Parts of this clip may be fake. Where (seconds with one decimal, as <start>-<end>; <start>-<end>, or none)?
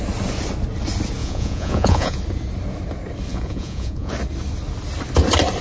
1.2-2.2; 3.3-4.1